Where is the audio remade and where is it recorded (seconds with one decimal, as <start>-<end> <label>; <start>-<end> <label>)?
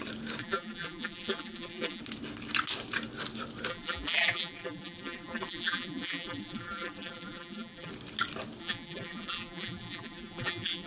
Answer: 0.0-0.4 recorded; 0.4-2.0 remade; 2.0-3.7 recorded; 3.7-7.9 remade; 7.9-8.6 recorded; 8.6-10.9 remade